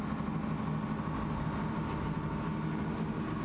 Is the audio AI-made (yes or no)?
no